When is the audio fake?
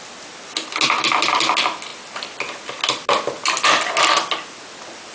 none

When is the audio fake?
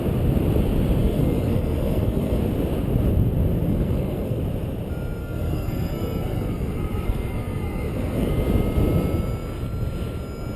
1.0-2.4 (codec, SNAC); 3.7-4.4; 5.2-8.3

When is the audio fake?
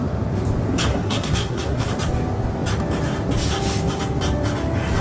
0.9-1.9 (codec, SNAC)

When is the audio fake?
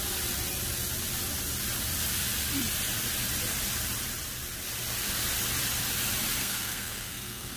6.4-7.6 (codec, SNAC)